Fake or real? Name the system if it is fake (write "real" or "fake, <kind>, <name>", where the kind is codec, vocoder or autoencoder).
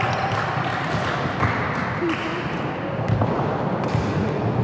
real